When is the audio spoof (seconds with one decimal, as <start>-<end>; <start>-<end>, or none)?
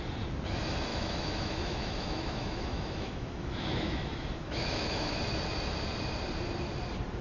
0.9-5.2